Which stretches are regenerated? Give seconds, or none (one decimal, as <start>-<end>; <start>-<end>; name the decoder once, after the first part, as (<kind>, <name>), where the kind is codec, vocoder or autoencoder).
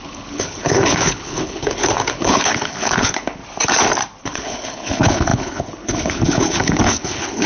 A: 0.0-3.4 (codec, HILCodec); 4.2-7.5